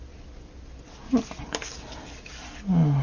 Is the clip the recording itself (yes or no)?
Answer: yes